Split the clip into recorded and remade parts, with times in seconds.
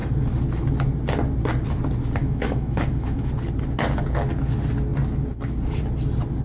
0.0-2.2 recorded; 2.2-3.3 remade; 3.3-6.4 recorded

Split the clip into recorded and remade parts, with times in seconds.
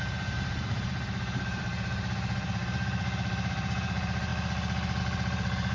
0.0-4.3 remade; 4.3-5.0 recorded; 5.0-5.7 remade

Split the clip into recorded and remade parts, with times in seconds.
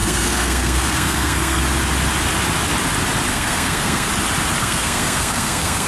0.0-1.6 remade; 1.6-3.3 recorded; 3.3-4.1 remade; 4.1-4.6 recorded; 4.6-5.9 remade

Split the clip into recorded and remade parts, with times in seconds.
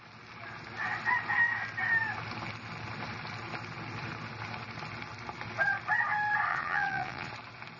0.0-6.5 recorded; 6.5-7.3 remade; 7.3-7.8 recorded